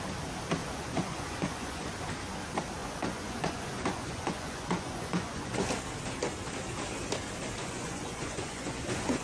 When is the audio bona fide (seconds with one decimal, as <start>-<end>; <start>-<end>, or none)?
0.0-0.6; 1.9-2.8; 5.7-7.6